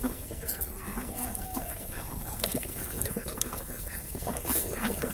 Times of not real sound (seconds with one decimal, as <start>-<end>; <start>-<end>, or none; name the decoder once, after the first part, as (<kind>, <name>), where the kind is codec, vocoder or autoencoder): 0.0-5.1 (codec, SNAC)

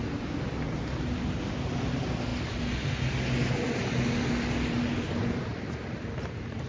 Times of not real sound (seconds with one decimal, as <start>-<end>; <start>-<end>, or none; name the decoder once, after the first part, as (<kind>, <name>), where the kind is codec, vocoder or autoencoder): none

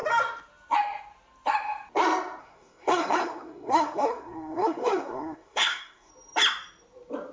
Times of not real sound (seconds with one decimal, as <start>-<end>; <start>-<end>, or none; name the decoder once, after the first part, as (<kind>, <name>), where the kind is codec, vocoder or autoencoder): 2.4-6.1 (codec, SNAC)

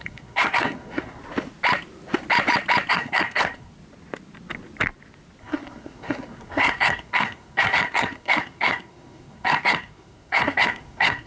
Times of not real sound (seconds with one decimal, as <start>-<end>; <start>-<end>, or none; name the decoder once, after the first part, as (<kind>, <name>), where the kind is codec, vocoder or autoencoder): 0.0-1.2 (codec, SNAC); 2.9-3.7; 5.4-11.3